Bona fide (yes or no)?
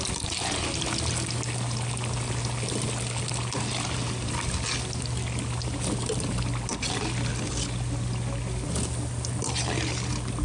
yes